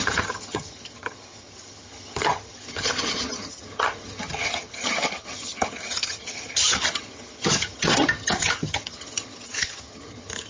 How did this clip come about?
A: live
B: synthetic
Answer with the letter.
B